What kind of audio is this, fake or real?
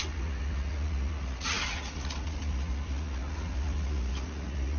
fake